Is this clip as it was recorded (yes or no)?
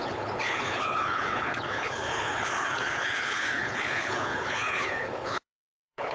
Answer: no